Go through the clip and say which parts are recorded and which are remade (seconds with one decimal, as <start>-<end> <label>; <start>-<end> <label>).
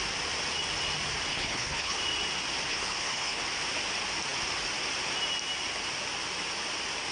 0.0-1.3 recorded; 1.3-2.0 remade; 2.0-2.7 recorded; 2.7-3.4 remade; 3.4-7.1 recorded